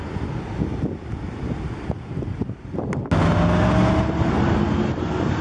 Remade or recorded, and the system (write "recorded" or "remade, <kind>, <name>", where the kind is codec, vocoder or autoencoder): recorded